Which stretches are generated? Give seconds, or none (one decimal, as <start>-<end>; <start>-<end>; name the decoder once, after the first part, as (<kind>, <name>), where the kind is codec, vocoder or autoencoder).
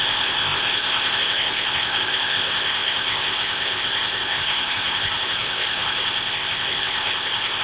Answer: 0.0-7.6 (codec, ZipCodec)